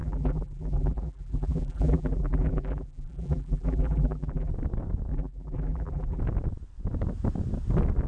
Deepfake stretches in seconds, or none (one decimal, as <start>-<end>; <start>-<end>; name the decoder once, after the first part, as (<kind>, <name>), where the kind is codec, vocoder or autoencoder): 0.0-4.5 (vocoder, BigVGAN v2); 5.1-6.2